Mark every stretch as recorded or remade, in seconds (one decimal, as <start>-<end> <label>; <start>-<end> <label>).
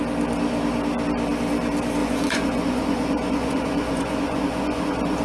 0.0-2.0 recorded; 2.0-5.2 remade